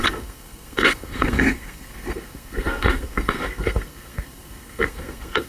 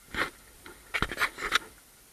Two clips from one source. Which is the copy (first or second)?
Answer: first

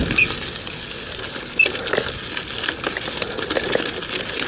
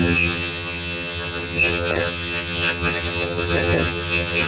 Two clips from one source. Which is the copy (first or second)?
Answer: second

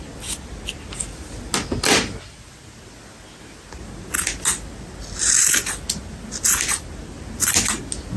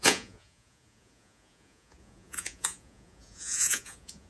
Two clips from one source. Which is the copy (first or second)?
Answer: second